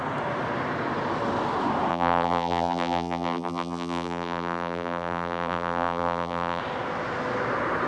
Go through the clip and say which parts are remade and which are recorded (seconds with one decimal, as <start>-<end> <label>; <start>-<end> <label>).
0.0-1.9 recorded; 1.9-6.6 remade; 6.6-7.9 recorded